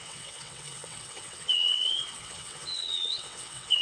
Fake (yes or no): yes